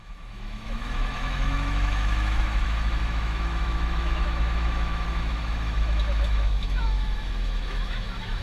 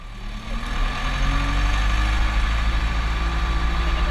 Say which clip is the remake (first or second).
first